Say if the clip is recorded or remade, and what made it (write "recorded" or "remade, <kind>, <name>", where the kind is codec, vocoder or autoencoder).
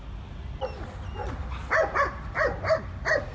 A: recorded